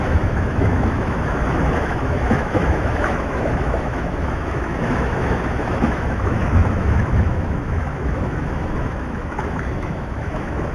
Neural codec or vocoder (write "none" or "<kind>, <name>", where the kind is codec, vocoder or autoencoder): autoencoder, DAC-VAE